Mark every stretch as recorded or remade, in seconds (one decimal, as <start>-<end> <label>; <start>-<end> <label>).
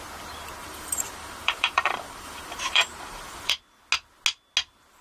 0.0-0.6 recorded; 0.6-3.6 remade; 3.6-5.0 recorded